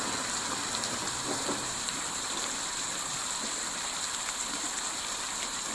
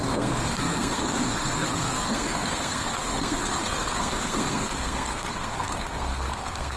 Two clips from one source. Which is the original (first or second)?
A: first